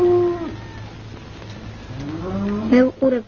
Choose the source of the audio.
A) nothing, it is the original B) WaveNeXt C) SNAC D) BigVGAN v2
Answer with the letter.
A